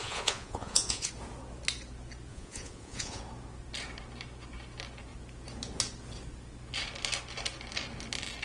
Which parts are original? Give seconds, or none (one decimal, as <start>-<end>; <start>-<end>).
1.1-2.3; 3.2-8.4